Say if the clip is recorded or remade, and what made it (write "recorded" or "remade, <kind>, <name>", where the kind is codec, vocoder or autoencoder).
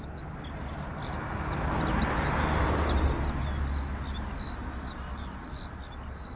recorded